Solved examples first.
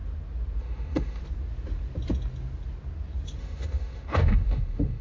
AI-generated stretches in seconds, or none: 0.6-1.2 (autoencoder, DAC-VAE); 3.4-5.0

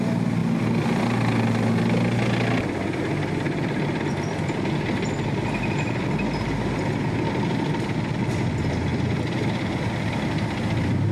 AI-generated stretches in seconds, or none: none

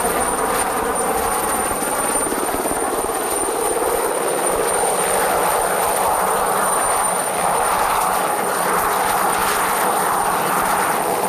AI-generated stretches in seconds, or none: none

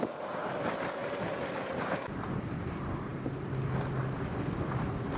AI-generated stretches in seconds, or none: none

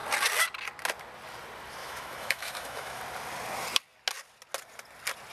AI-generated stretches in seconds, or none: 1.8-3.0 (autoencoder, DAC-VAE)

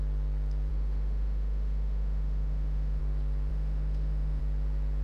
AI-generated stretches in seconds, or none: 0.7-3.0 (autoencoder, DAC-VAE); 3.5-4.4